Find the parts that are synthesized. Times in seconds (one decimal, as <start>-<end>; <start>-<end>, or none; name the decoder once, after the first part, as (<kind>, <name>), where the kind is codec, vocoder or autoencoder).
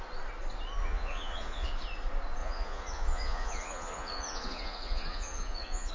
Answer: 0.8-1.7 (vocoder, Vocos); 2.4-5.9